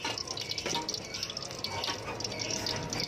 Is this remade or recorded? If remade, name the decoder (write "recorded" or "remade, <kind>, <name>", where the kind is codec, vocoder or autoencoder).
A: recorded